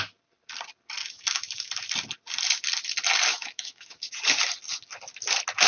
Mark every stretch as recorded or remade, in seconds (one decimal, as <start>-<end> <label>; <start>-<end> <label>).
0.0-1.0 recorded; 1.0-1.7 remade; 1.7-3.3 recorded; 3.3-4.1 remade; 4.1-5.7 recorded